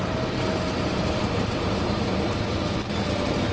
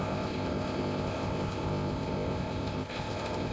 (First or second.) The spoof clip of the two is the second